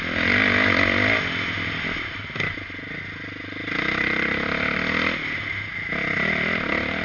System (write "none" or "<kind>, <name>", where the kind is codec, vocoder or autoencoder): none